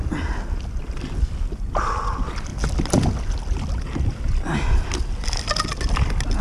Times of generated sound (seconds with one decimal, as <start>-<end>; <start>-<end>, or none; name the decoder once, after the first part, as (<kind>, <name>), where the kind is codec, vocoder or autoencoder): none

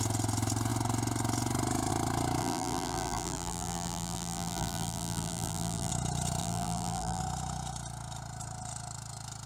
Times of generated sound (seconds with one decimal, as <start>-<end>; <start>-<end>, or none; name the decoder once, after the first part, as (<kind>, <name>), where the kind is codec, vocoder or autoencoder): 2.4-5.9 (vocoder, BigVGAN v2); 6.4-7.2

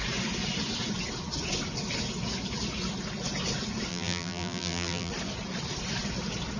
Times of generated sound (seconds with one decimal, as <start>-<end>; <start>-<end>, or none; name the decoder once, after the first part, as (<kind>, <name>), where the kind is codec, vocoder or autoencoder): 3.9-5.1 (vocoder, BigVGAN v2)

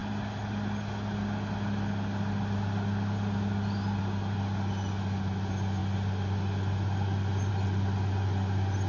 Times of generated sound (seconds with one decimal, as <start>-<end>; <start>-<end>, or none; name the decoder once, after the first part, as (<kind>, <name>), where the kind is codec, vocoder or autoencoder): none

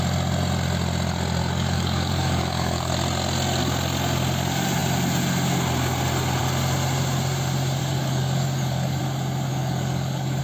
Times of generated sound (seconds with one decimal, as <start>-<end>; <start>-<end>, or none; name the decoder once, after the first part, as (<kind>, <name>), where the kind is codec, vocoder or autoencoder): 1.4-2.9 (codec, DAC); 7.8-9.0; 9.5-10.4